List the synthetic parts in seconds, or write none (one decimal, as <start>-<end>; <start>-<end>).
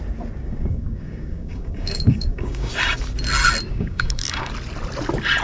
0.4-2.7; 3.7-4.5